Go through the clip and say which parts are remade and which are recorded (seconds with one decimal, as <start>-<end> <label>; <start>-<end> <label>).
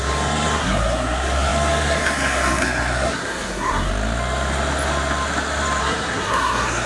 0.0-3.9 remade; 3.9-5.8 recorded; 5.8-6.9 remade